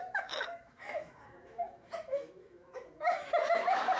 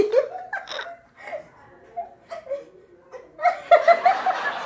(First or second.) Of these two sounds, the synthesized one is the first